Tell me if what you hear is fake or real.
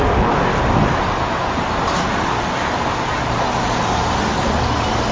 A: real